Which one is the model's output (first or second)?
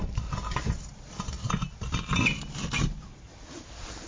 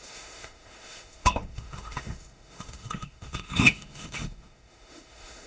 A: second